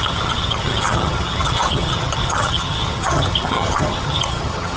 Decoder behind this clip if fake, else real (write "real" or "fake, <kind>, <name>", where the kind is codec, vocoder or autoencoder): fake, vocoder, HiFi-GAN